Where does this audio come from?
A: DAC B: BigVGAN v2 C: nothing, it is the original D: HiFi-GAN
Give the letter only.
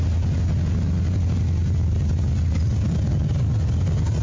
C